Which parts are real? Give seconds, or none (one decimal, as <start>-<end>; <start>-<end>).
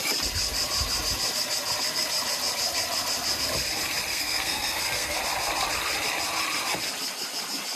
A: 0.0-4.1; 5.2-7.8